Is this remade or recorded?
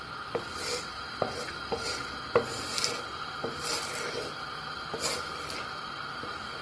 recorded